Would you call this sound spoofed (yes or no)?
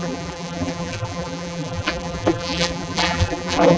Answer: yes